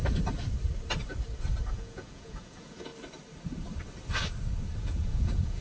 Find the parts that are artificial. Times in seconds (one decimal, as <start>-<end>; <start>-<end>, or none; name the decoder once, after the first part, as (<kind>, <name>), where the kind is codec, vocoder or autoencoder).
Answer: 1.7-2.9 (vocoder, Vocos); 4.8-5.6